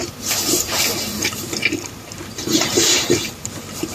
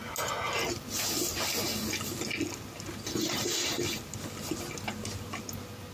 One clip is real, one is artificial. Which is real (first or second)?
second